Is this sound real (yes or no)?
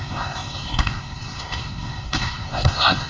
no